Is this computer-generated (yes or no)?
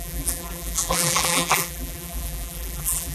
yes